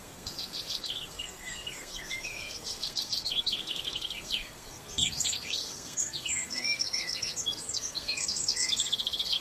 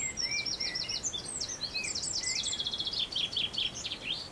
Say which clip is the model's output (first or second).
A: first